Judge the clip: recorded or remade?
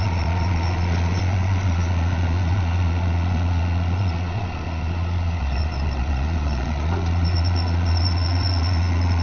remade